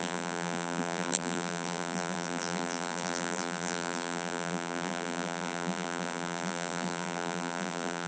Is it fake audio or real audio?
fake